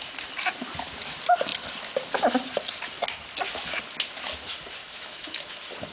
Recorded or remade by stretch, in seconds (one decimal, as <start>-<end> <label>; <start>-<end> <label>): 0.0-4.8 recorded; 4.8-5.5 remade; 5.5-5.9 recorded